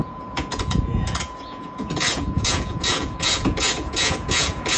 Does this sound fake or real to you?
fake